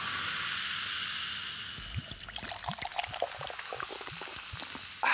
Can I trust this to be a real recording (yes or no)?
yes